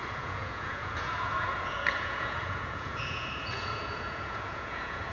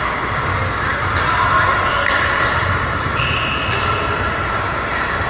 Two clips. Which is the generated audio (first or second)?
first